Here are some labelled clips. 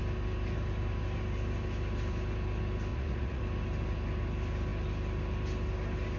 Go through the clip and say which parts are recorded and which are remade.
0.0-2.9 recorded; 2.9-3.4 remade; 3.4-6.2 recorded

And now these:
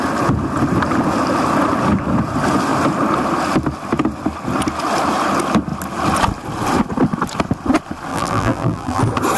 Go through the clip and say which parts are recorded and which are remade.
0.0-8.1 recorded; 8.1-9.0 remade; 9.0-9.4 recorded

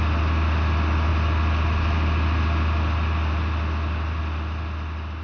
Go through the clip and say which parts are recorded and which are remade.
0.0-5.2 recorded

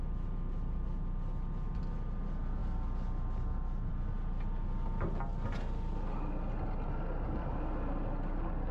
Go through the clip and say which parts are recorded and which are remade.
0.0-8.7 recorded

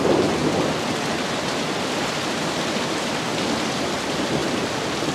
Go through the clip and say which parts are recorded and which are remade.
0.0-0.4 recorded; 0.4-3.5 remade; 3.5-4.4 recorded; 4.4-5.1 remade

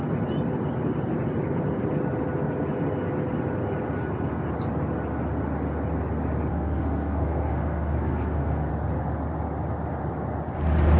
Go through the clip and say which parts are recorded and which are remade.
0.0-6.5 recorded; 6.5-8.7 remade; 8.7-11.0 recorded